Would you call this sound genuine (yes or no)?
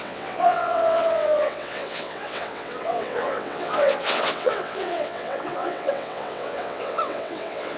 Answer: no